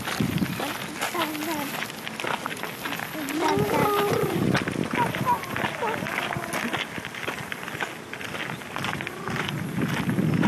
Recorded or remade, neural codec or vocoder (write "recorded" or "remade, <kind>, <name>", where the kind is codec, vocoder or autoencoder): recorded